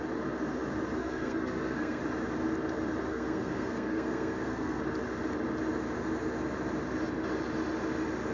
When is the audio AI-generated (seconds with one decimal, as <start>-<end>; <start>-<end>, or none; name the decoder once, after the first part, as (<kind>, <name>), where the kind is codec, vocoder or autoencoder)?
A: 1.0-2.0 (codec, SNAC); 3.1-4.8